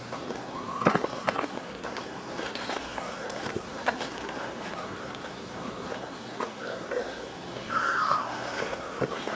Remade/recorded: remade